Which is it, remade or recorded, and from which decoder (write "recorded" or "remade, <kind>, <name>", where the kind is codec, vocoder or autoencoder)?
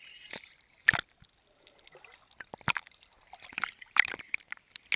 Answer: recorded